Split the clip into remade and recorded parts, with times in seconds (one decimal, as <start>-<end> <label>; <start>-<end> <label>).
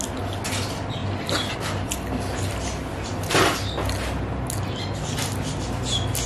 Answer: 0.0-6.3 recorded